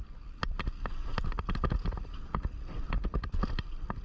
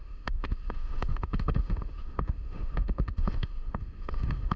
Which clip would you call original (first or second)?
first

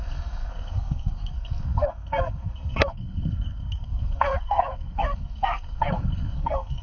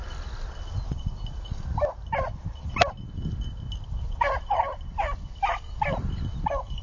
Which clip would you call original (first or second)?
second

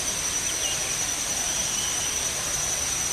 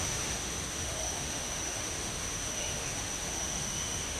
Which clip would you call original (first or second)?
first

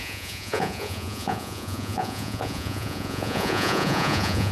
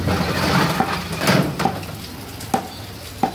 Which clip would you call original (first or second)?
second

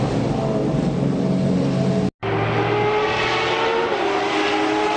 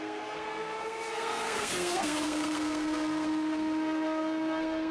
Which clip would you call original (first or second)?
first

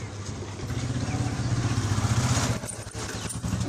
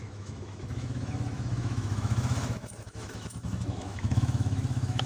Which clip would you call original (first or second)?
first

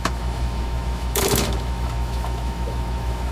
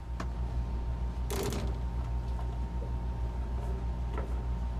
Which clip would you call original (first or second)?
second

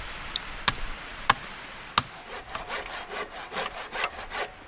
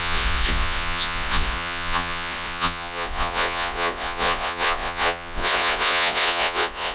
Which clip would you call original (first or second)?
first